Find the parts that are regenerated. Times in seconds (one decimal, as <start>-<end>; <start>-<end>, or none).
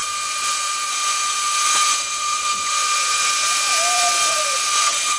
0.0-3.7; 4.3-5.2